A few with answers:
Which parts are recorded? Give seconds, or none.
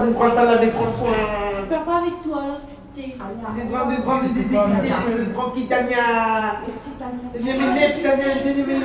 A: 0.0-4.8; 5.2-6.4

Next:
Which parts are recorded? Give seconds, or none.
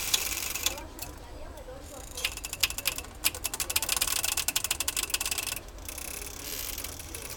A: 2.6-7.0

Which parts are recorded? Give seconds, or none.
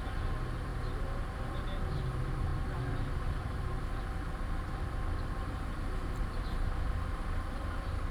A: 0.0-2.5; 4.7-8.1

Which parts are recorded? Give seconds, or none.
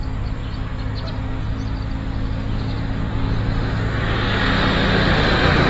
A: 0.0-5.7